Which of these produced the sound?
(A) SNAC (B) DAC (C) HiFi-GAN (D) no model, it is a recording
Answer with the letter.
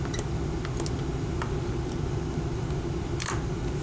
D